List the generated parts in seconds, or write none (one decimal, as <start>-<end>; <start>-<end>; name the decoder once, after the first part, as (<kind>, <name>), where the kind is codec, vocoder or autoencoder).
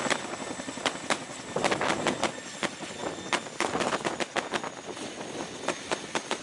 none